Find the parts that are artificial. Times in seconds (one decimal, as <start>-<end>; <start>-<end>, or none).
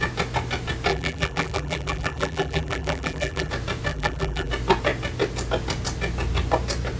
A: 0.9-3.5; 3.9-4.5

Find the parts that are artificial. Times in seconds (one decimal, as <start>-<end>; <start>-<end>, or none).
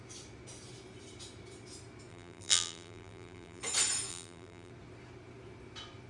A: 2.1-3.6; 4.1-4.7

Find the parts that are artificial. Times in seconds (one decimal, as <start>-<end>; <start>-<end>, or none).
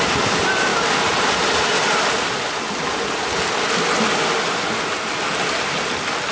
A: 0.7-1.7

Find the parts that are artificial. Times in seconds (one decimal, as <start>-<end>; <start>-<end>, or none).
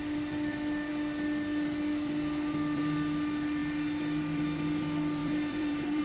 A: 5.2-6.0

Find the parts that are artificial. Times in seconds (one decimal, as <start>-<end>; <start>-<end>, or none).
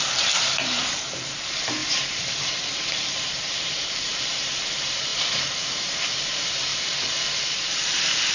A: 0.0-6.7; 7.6-8.3